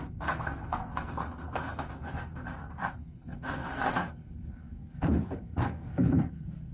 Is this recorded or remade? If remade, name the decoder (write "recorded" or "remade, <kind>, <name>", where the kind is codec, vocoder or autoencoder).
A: remade, codec, SNAC